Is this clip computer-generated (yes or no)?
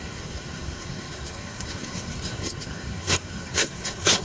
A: yes